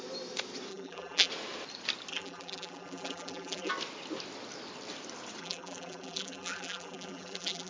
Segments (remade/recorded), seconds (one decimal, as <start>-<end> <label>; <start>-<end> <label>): 0.0-0.7 recorded; 0.7-1.3 remade; 1.3-2.1 recorded; 2.1-3.7 remade; 3.7-5.4 recorded; 5.4-7.7 remade

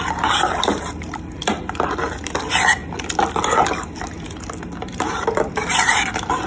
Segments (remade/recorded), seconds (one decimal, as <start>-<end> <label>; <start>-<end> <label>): 0.0-2.8 remade; 2.8-4.8 recorded; 4.8-6.5 remade

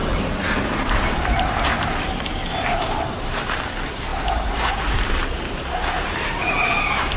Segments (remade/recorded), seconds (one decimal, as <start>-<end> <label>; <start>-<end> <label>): 0.0-3.6 remade; 3.6-4.1 recorded; 4.1-7.2 remade